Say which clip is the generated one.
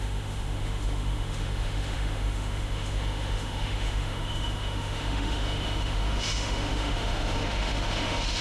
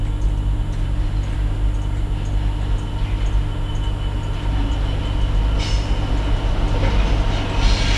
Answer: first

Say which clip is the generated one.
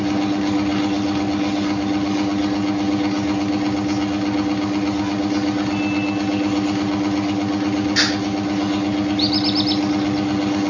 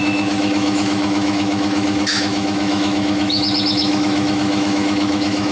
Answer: second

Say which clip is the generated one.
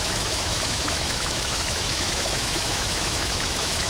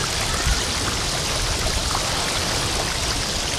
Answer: first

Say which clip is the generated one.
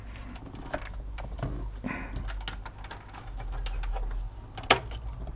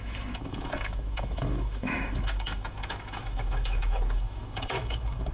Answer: second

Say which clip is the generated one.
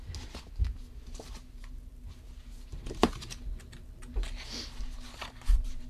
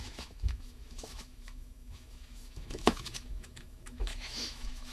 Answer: second